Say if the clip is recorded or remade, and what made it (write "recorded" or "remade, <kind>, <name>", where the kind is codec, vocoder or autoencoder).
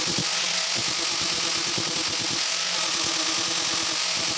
recorded